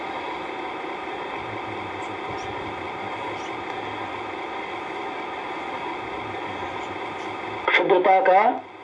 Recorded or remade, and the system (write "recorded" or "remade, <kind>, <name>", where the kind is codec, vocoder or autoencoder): recorded